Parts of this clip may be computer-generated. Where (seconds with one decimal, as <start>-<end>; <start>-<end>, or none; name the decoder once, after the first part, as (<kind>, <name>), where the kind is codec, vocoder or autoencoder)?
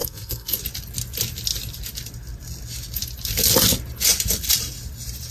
0.0-0.6 (codec, SNAC)